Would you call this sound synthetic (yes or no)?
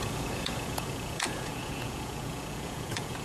yes